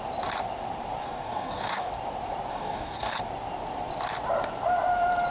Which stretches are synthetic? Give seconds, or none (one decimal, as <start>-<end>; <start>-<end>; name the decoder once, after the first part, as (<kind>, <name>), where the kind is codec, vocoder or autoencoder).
1.0-1.9 (codec, DAC); 2.5-3.2